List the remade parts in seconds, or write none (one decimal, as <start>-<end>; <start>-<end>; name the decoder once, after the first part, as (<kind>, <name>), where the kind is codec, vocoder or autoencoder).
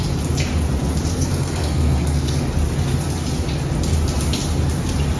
1.1-2.4 (codec, SNAC)